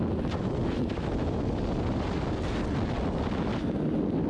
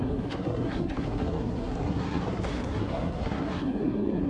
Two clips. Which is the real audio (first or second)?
first